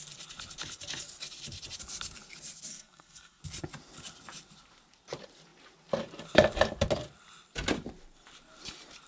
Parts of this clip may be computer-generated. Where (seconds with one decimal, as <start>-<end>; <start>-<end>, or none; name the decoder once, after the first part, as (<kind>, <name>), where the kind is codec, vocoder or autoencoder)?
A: 2.7-3.4 (codec, SNAC)

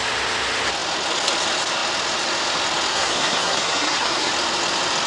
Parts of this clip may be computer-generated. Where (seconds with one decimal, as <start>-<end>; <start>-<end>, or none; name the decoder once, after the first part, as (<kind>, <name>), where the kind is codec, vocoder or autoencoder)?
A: 2.9-4.3 (codec, SNAC)

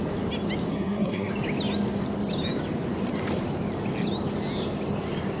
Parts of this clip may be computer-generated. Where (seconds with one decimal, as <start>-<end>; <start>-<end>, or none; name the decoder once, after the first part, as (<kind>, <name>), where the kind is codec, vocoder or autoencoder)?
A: 0.7-1.3 (codec, SNAC)

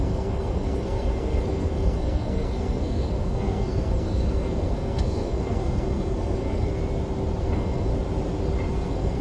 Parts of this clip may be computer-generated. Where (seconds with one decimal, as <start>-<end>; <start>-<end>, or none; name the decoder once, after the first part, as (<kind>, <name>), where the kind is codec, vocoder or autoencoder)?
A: 0.0-6.8 (codec, SNAC); 7.4-7.9; 8.7-9.2

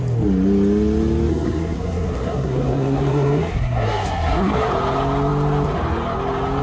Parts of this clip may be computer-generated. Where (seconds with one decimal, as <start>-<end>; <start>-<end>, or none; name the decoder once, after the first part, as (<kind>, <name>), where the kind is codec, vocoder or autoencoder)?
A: 1.3-4.7 (codec, SNAC)

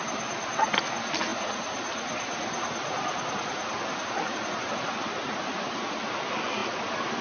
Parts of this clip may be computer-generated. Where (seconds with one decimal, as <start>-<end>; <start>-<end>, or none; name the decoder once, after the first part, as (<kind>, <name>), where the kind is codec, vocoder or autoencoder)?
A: none